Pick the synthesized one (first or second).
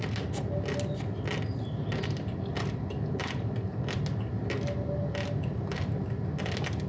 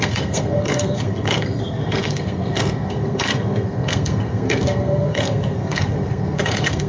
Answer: second